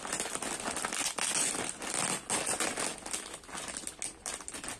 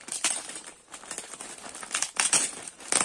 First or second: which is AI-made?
second